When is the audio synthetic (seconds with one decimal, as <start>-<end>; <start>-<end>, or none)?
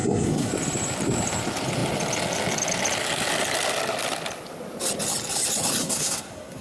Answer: 0.0-0.5; 5.8-6.6